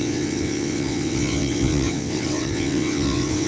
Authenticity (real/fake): fake